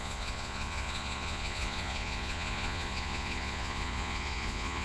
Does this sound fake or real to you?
fake